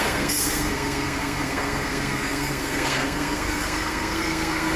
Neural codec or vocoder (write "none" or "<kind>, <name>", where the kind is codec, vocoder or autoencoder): codec, SNAC